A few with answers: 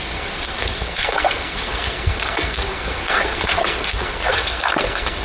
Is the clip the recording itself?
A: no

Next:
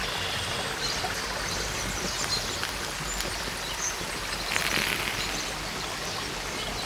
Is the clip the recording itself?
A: yes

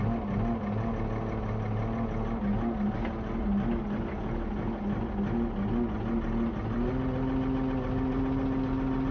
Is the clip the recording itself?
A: yes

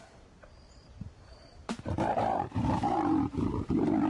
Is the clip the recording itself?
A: no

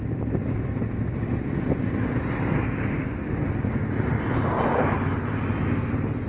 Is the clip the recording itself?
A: yes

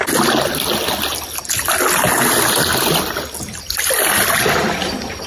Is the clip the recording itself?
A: yes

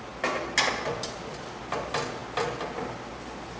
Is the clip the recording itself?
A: yes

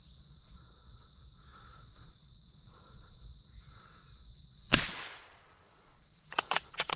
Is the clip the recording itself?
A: no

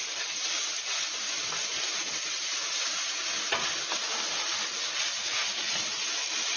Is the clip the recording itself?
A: yes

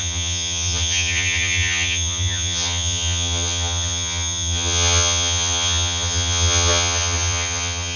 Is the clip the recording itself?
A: no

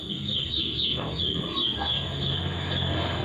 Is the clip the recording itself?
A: no